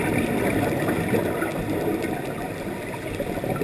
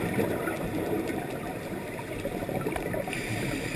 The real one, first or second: first